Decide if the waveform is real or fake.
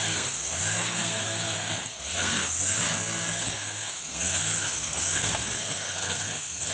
fake